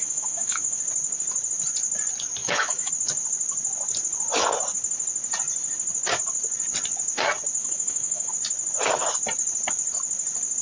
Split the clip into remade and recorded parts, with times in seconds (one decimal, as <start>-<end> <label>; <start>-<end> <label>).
0.0-0.8 remade; 0.8-2.4 recorded; 2.4-2.9 remade; 2.9-7.6 recorded; 7.6-8.3 remade; 8.3-10.6 recorded